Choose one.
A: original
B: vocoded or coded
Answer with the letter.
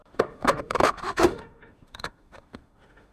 B